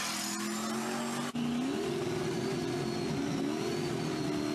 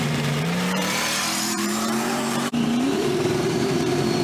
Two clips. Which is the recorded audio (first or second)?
first